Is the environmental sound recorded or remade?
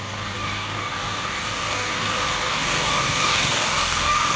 remade